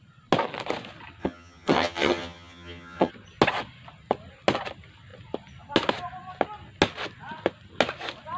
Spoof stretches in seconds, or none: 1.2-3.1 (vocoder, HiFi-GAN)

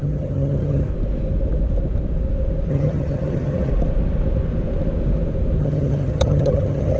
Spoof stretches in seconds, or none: 0.0-0.9 (vocoder, HiFi-GAN); 2.7-3.7; 5.6-7.0

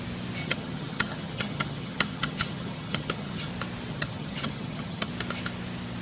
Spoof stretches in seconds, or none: 0.4-3.5 (vocoder, HiFi-GAN); 3.9-5.1